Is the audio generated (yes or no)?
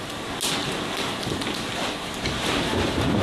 no